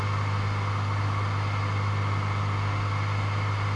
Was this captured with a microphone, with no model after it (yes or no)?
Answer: yes